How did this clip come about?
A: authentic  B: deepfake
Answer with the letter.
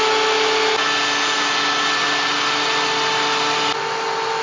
A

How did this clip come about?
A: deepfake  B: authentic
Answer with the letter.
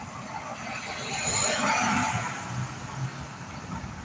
B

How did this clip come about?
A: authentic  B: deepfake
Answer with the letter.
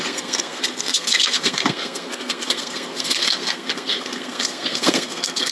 B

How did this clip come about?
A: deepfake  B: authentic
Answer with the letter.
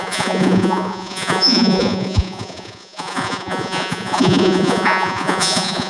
A